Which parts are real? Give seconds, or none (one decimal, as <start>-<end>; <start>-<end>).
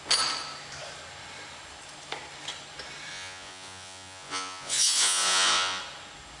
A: 0.0-3.1; 5.8-6.4